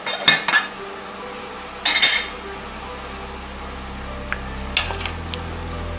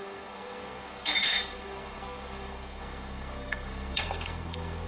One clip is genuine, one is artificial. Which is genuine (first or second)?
first